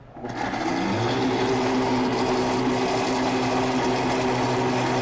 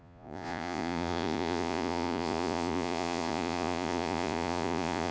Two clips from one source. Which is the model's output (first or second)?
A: second